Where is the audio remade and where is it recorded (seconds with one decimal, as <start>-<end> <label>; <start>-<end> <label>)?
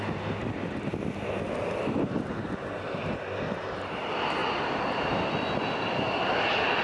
0.0-4.4 recorded; 4.4-5.3 remade; 5.3-6.8 recorded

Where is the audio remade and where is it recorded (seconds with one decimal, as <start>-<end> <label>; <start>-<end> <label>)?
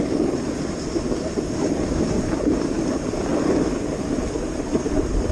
0.0-5.3 remade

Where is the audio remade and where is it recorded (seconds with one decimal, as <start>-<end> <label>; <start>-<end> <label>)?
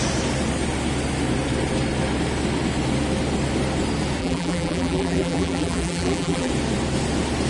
0.0-4.2 recorded; 4.2-6.5 remade; 6.5-7.5 recorded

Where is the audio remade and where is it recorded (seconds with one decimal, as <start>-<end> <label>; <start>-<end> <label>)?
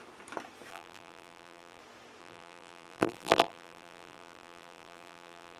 0.0-0.7 recorded; 0.7-1.8 remade; 1.8-2.2 recorded; 2.2-5.6 remade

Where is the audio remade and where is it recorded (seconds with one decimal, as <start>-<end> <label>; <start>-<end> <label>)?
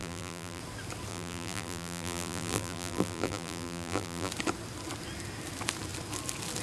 0.0-0.6 remade; 0.6-1.1 recorded; 1.1-4.3 remade; 4.3-6.6 recorded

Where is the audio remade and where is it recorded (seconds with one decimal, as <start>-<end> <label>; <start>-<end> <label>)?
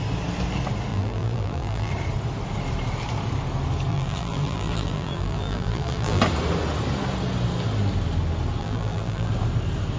0.0-0.9 recorded; 0.9-1.9 remade; 1.9-3.9 recorded; 3.9-6.2 remade; 6.2-8.6 recorded; 8.6-9.3 remade; 9.3-10.0 recorded